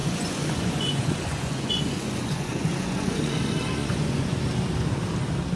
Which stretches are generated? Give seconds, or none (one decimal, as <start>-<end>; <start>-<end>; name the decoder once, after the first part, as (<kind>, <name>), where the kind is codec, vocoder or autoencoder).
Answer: 0.0-3.4 (vocoder, Vocos); 3.8-4.4